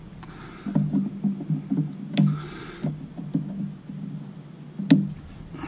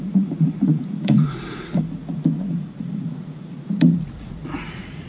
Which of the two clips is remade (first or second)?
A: second